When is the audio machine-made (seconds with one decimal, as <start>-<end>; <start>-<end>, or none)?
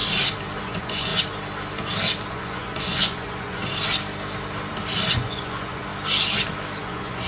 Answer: 0.6-1.1; 2.3-3.6; 5.1-5.9; 6.8-7.3